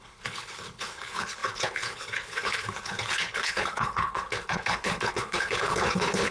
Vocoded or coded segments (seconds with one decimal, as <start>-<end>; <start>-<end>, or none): 0.0-6.3